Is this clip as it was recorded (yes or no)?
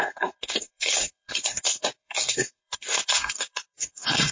no